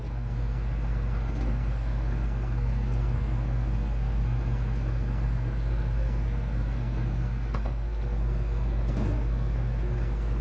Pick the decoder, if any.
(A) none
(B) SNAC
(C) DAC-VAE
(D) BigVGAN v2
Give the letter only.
B